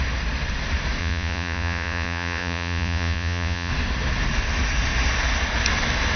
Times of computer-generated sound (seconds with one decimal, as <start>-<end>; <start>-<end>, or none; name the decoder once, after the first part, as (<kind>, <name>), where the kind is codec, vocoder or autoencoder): 1.0-3.7 (vocoder, Vocos)